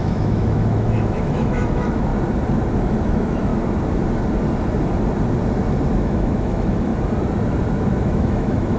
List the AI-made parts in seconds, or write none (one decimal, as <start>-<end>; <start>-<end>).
0.0-2.1; 2.8-3.5; 6.0-6.9; 8.0-8.8